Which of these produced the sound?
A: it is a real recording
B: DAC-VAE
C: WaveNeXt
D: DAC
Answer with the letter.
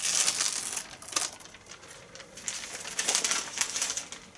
A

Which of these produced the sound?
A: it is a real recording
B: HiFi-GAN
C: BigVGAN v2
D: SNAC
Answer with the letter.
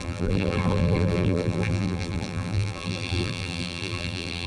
C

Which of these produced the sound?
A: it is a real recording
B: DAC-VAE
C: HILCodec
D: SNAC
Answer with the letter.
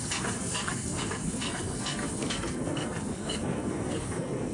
D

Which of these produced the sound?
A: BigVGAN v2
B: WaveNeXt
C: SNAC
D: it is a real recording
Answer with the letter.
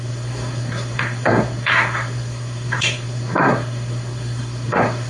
C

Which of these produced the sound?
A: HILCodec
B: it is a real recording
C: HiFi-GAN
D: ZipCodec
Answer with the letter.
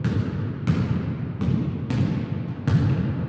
B